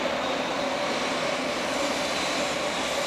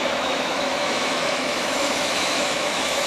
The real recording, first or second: first